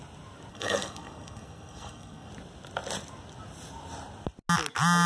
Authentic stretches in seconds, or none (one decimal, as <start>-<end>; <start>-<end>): 0.0-0.5; 2.3-5.1

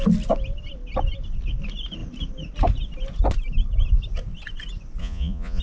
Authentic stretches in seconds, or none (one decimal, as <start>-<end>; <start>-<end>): 0.0-5.0

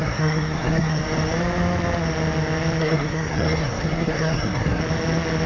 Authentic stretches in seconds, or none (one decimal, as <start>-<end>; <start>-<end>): 1.0-2.8; 4.8-5.5

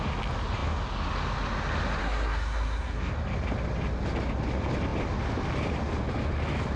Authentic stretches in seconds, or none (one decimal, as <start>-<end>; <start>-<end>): 0.0-2.0; 3.1-6.8

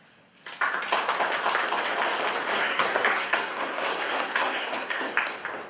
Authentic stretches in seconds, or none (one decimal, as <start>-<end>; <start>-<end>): 0.0-2.5; 5.1-5.7

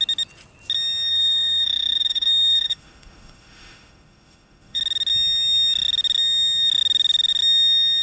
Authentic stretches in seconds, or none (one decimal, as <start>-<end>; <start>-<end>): 0.0-1.1; 4.8-8.0

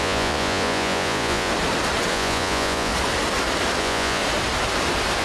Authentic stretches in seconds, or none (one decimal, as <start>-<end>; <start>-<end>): 1.5-2.1; 2.9-3.8; 4.2-5.2